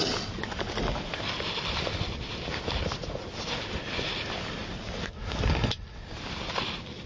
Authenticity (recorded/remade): recorded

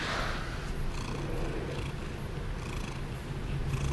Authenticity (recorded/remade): recorded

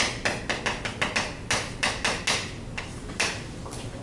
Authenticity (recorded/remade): recorded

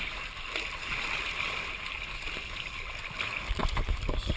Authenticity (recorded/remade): recorded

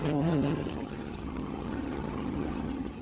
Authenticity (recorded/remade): remade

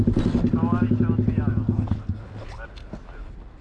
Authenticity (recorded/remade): recorded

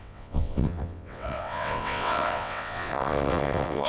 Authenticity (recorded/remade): remade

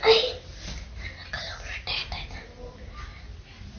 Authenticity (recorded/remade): recorded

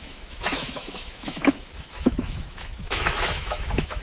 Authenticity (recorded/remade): remade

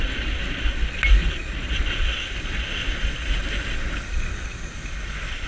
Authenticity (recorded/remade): recorded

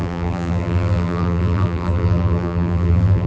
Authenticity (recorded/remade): remade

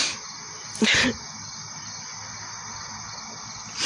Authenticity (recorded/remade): recorded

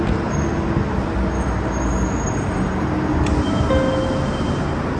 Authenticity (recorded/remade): recorded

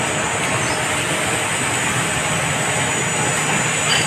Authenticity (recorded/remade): recorded